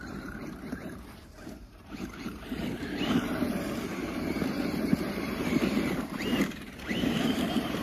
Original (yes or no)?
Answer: no